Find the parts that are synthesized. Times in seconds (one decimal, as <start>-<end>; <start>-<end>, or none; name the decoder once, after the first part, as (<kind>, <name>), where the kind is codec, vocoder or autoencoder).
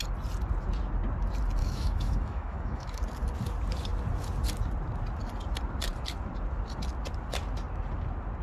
1.6-3.0 (autoencoder, DAC-VAE)